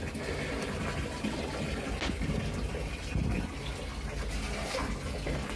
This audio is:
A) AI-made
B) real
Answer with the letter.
B